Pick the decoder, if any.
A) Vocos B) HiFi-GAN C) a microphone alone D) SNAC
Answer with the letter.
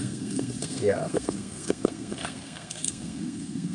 D